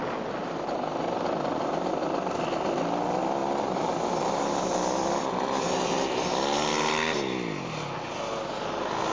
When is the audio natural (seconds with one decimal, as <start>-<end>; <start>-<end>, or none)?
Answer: 0.0-0.4; 1.4-3.4; 6.4-9.1